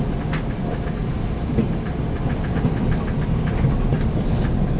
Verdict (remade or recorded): recorded